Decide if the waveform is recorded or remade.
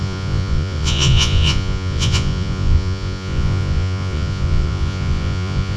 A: remade